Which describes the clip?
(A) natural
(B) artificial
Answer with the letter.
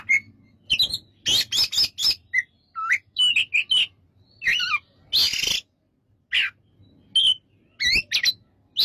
A